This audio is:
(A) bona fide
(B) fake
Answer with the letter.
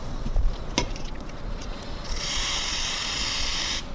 B